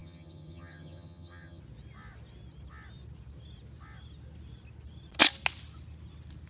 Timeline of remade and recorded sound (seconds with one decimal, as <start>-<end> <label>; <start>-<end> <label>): 0.0-1.6 remade; 1.6-6.5 recorded